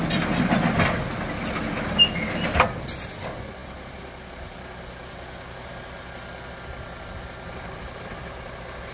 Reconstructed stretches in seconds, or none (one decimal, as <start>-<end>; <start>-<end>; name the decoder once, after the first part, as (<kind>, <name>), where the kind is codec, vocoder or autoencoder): none